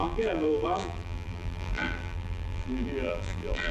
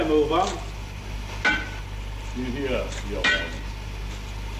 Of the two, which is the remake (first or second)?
first